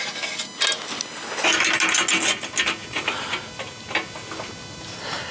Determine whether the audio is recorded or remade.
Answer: recorded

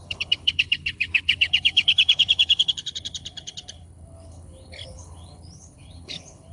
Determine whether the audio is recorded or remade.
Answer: remade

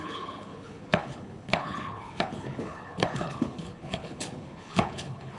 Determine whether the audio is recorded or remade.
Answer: remade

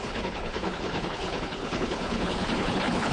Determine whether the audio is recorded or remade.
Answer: remade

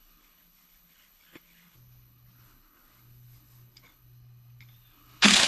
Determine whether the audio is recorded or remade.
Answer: remade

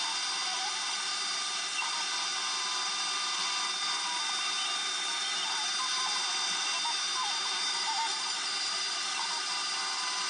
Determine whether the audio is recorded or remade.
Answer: recorded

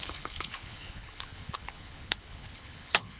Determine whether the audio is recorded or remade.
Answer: remade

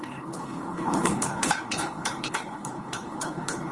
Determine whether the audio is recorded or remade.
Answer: remade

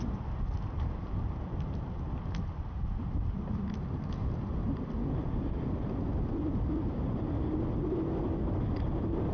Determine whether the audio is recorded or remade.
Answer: recorded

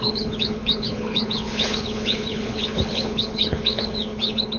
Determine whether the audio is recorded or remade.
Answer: remade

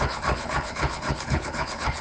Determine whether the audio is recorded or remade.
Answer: remade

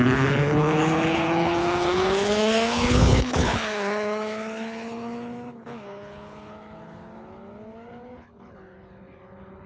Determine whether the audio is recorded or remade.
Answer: remade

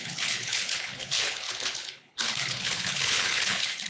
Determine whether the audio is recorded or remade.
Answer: remade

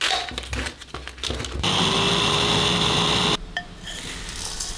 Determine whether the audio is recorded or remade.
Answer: recorded